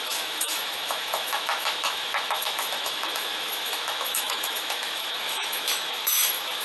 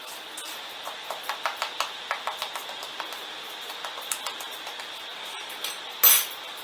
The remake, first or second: first